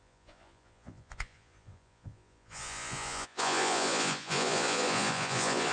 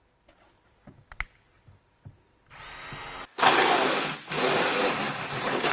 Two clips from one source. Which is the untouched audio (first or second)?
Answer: second